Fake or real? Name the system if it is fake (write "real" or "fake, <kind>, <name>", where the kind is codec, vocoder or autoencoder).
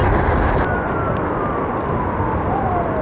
fake, vocoder, BigVGAN v2